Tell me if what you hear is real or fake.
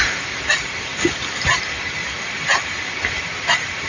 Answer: real